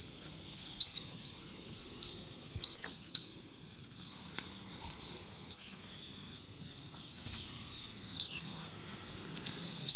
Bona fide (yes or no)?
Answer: no